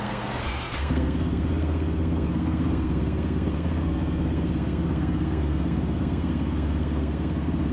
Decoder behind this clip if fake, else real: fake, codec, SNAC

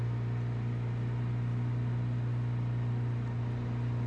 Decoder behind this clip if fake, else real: real